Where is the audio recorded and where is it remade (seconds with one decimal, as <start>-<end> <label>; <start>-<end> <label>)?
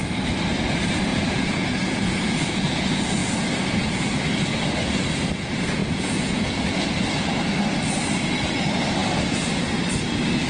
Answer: 0.0-1.1 recorded; 1.1-2.8 remade; 2.8-3.2 recorded; 3.2-4.1 remade; 4.1-5.8 recorded; 5.8-6.6 remade; 6.6-10.5 recorded